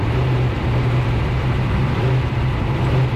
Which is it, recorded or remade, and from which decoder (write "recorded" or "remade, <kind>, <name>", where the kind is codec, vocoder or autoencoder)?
remade, vocoder, BigVGAN v2